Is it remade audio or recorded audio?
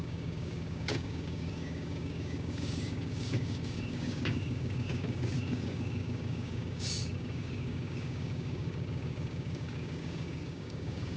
remade